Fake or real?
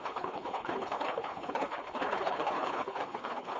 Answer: fake